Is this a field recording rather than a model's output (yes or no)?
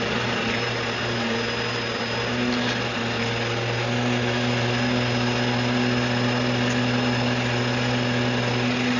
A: yes